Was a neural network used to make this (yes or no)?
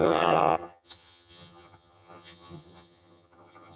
yes